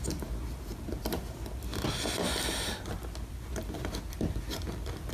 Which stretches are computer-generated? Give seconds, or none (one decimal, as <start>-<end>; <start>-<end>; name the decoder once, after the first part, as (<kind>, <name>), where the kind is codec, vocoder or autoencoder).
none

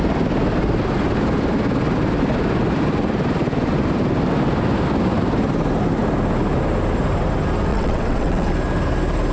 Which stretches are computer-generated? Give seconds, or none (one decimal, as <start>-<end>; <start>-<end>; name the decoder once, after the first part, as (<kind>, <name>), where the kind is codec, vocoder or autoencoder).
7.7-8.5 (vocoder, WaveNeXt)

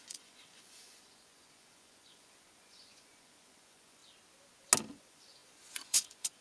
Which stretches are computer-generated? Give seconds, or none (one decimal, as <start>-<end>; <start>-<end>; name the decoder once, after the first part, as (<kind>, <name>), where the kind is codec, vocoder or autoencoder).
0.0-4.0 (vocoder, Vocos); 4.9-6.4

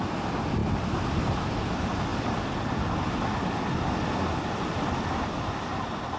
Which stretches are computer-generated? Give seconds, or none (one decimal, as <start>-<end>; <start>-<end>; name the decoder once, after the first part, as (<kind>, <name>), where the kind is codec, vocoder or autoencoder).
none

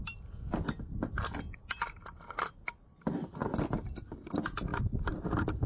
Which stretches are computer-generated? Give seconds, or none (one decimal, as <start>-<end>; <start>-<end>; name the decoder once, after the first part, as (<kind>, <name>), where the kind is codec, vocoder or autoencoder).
none

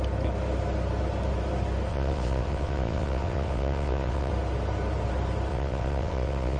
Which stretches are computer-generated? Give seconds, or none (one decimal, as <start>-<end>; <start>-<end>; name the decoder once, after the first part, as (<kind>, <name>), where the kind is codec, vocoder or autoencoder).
1.9-4.3 (vocoder, WaveNeXt); 5.5-6.6

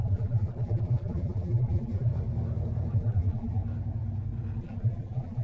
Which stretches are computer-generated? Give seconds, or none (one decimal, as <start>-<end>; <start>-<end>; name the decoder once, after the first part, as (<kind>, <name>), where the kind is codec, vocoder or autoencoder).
0.0-2.1 (vocoder, BigVGAN v2); 2.9-3.6; 4.6-5.4